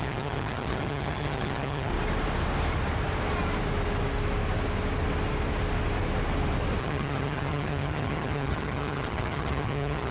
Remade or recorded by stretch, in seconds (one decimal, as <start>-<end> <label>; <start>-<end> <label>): 0.0-1.9 remade; 1.9-6.8 recorded; 6.8-10.1 remade